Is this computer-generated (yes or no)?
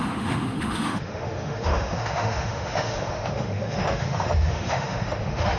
yes